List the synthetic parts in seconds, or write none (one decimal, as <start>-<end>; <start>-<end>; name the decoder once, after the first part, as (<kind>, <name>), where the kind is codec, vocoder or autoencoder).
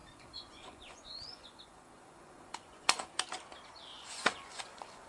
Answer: 0.0-3.1 (vocoder, Vocos); 3.9-5.1